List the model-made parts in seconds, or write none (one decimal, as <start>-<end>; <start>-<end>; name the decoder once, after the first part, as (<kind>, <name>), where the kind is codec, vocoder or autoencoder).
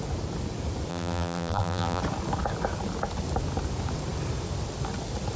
0.9-2.0 (vocoder, BigVGAN v2)